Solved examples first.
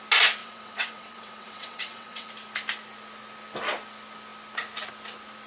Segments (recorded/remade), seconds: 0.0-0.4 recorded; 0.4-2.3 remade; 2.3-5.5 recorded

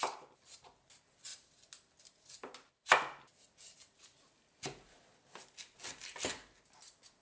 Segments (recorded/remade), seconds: 0.0-7.2 recorded

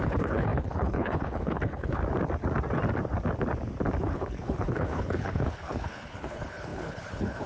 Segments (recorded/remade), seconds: 0.0-2.0 remade; 2.0-4.0 recorded; 4.0-7.5 remade

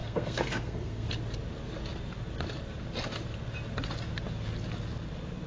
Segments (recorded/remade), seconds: 0.0-1.1 remade; 1.1-5.5 recorded

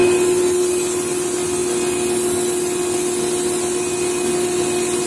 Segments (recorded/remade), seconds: 0.0-5.1 recorded